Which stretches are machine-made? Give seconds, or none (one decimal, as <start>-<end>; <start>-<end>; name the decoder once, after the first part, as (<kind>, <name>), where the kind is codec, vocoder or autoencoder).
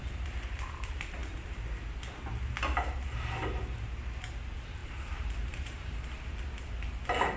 4.8-6.4 (vocoder, BigVGAN v2)